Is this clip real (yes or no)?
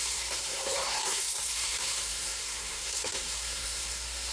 no